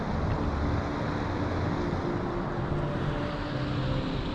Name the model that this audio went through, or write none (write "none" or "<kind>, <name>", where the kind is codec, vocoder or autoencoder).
none